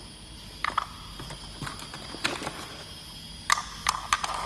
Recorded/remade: recorded